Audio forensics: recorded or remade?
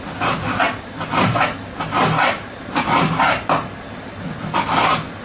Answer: recorded